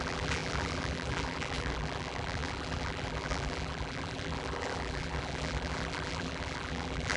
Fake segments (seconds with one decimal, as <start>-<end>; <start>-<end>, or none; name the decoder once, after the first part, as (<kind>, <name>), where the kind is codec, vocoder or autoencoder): 0.0-7.2 (vocoder, BigVGAN v2)